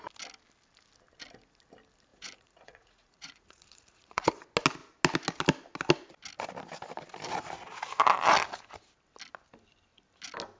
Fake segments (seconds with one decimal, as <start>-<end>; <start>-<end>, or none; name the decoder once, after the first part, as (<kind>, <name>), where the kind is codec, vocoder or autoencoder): 2.1-4.3 (vocoder, Vocos)